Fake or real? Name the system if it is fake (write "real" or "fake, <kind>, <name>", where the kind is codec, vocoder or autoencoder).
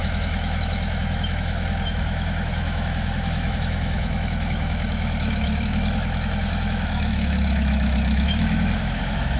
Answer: fake, autoencoder, DAC-VAE